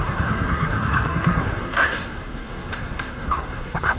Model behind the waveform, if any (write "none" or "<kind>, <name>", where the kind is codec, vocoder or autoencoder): codec, SNAC